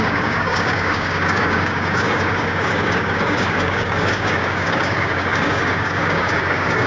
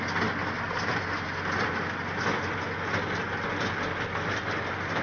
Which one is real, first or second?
second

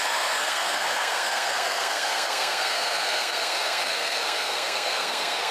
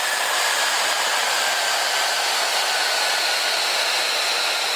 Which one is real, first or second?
second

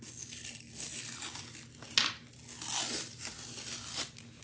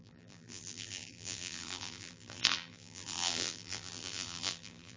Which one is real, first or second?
first